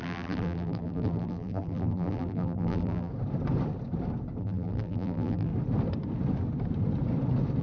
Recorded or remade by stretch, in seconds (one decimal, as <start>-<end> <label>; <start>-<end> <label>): 0.0-3.1 remade; 3.1-4.4 recorded; 4.4-5.5 remade; 5.5-7.6 recorded